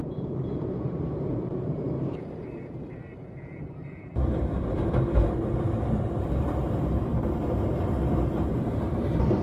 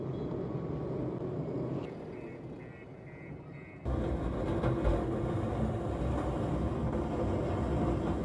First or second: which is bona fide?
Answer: second